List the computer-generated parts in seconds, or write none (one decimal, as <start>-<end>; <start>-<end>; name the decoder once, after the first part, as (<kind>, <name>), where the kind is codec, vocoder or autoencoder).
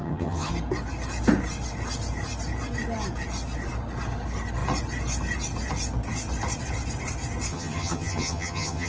0.0-0.5 (vocoder, HiFi-GAN); 7.5-8.9